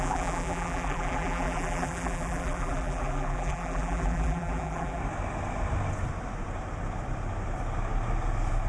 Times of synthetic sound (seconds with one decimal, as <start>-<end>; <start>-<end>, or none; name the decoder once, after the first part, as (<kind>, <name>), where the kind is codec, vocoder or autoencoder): 0.0-5.0 (vocoder, BigVGAN v2)